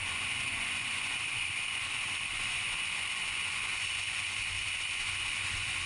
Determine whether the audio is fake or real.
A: fake